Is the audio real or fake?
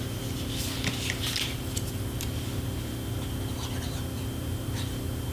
real